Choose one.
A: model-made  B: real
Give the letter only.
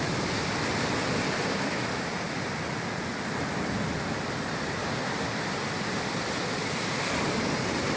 B